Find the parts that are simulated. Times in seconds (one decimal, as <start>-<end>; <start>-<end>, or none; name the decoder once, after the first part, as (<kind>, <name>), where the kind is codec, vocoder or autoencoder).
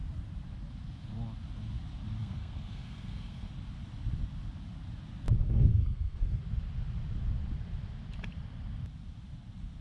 2.2-3.5 (codec, SNAC); 5.4-6.4